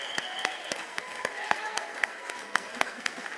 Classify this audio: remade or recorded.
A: remade